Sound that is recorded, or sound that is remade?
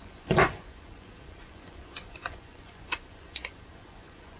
remade